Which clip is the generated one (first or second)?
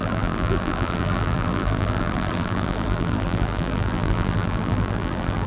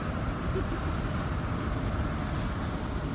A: first